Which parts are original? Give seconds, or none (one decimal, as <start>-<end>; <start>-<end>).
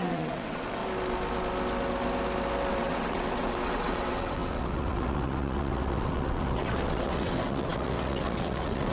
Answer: 0.8-2.8